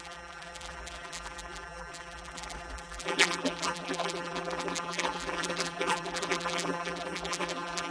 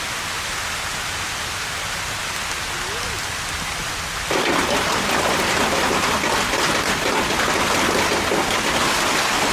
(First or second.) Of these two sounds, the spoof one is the first